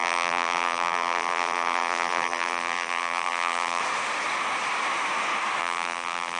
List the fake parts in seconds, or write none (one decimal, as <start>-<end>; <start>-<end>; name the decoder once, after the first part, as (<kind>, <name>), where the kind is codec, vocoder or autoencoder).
0.0-3.8 (vocoder, BigVGAN v2); 5.6-6.4